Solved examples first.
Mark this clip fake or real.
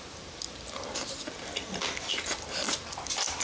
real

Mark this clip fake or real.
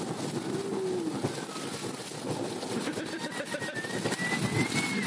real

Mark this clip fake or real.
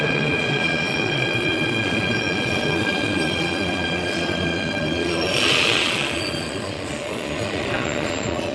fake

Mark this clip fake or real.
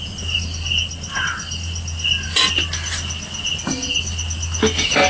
real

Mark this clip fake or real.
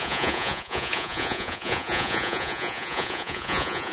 fake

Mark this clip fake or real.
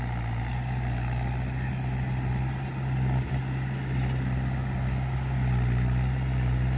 real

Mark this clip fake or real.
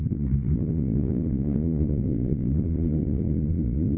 fake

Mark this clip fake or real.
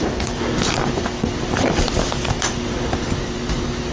real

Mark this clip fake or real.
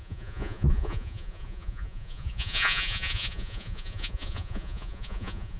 fake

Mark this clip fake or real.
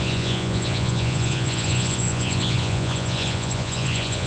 fake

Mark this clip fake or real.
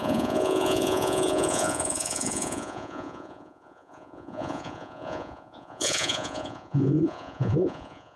fake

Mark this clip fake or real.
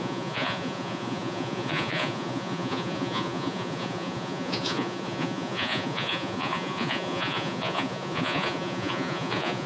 fake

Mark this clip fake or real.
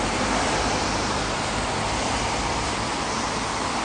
real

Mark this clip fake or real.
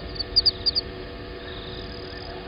real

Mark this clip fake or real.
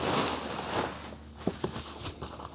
real